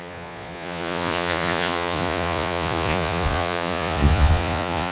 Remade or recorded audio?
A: remade